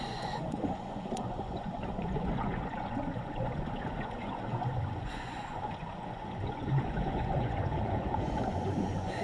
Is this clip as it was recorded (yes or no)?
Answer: no